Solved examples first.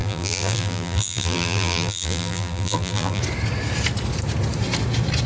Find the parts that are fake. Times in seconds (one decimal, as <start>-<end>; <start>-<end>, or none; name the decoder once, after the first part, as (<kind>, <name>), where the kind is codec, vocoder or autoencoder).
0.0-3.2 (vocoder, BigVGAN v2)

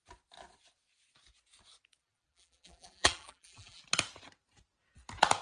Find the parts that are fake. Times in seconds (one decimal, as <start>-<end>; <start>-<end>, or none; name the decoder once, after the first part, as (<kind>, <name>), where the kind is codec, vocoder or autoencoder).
2.0-3.8 (vocoder, BigVGAN v2)

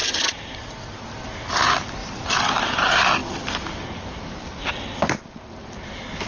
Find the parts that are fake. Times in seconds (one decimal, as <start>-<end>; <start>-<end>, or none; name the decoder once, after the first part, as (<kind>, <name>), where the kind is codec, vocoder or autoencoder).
0.0-0.6 (vocoder, BigVGAN v2); 2.0-2.7; 3.2-4.7